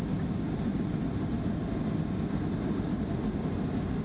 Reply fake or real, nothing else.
real